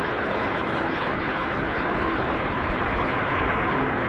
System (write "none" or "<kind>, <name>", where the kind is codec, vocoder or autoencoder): codec, HILCodec